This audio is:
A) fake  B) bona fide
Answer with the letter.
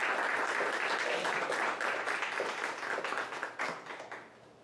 B